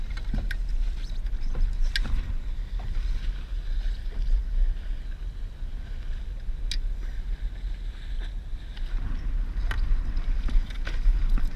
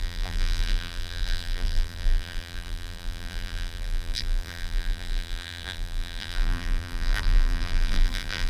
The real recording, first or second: first